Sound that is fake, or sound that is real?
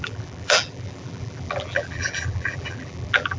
fake